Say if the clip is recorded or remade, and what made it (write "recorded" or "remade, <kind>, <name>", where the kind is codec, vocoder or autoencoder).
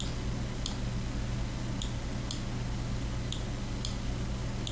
recorded